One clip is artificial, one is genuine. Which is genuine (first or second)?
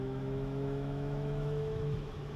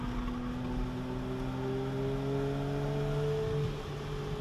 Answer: second